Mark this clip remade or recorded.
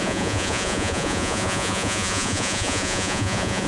remade